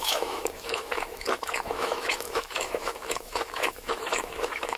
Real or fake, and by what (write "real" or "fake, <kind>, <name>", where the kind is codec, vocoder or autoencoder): fake, autoencoder, DAC-VAE